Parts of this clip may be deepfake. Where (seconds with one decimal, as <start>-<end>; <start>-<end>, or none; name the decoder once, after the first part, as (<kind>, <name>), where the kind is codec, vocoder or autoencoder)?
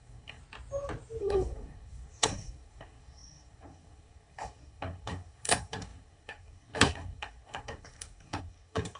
0.0-0.4 (codec, SNAC); 1.2-9.0